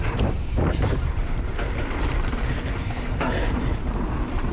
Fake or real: fake